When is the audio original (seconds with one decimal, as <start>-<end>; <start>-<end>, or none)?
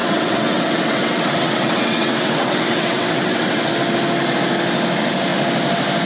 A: 3.7-6.1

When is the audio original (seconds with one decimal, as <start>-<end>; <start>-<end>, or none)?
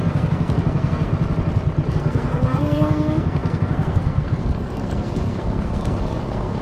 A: 1.1-1.9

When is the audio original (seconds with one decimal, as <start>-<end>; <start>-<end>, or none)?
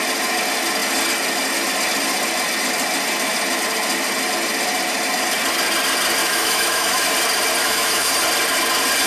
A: 0.0-6.2; 7.1-7.6; 8.1-9.1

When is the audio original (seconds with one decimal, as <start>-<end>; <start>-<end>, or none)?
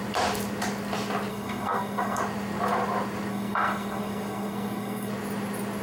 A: 0.0-1.3; 2.2-3.3; 5.1-5.8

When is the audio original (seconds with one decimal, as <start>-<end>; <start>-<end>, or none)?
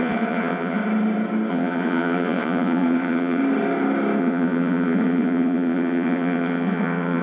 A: 0.8-1.5; 3.4-4.2